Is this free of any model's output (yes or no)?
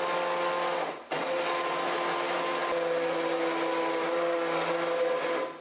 yes